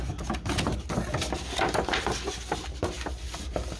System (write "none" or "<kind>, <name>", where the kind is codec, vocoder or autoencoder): none